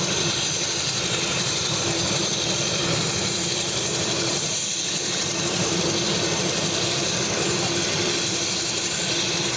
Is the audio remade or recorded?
remade